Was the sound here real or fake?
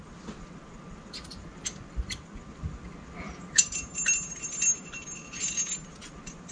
real